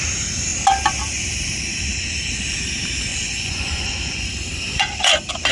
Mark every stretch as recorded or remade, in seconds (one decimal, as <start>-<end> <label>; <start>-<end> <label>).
0.0-3.1 recorded; 3.1-4.3 remade; 4.3-5.5 recorded